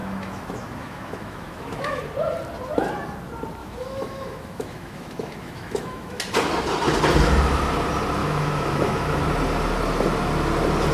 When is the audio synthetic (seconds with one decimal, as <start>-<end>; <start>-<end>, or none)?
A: 0.0-2.0; 3.6-6.2; 8.2-9.2